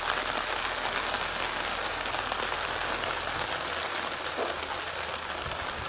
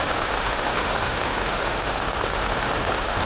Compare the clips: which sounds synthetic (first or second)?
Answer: second